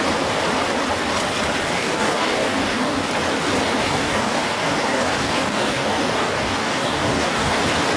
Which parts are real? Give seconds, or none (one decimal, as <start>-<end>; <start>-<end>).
0.0-1.7; 3.1-3.6; 7.6-8.0